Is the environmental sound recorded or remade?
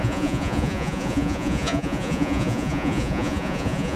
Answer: remade